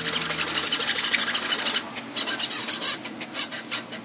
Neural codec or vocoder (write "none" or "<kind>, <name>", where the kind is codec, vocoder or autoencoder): none